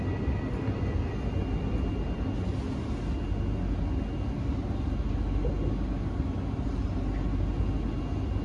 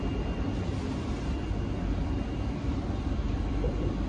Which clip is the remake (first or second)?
second